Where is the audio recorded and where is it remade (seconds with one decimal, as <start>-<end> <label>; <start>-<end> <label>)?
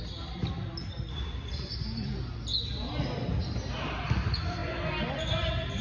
0.0-5.8 recorded